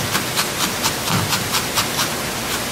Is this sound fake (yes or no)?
no